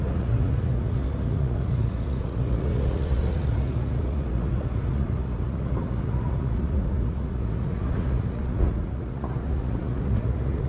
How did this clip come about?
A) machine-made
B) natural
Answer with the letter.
A